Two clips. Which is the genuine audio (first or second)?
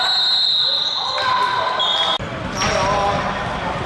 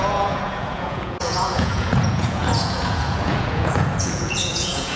first